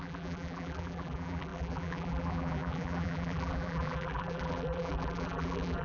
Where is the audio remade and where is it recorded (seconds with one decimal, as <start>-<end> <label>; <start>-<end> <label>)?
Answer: 0.0-5.8 remade